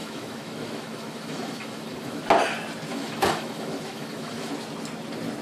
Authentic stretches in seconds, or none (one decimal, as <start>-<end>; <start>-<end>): 2.2-2.9; 4.5-5.4